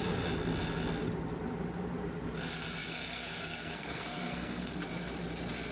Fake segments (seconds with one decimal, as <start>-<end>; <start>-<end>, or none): 2.8-4.7